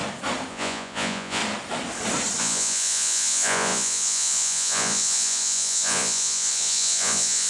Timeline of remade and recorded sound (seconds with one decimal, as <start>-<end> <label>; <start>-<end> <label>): 0.0-0.5 recorded; 0.5-1.4 remade; 1.4-2.4 recorded; 2.4-7.5 remade

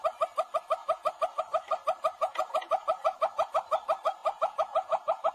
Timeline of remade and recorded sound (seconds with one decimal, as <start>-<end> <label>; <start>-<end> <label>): 0.0-0.8 recorded; 0.8-1.4 remade; 1.4-2.2 recorded; 2.2-3.5 remade; 3.5-4.2 recorded; 4.2-5.3 remade